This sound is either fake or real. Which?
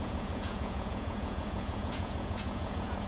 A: fake